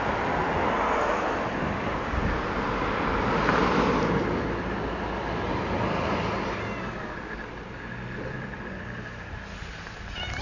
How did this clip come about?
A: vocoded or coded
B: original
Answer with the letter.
B